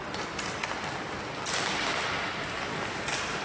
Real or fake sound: real